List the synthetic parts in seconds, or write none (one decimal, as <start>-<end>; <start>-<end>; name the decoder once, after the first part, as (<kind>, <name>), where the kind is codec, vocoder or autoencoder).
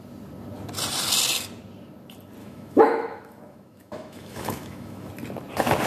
2.4-5.1 (autoencoder, DAC-VAE)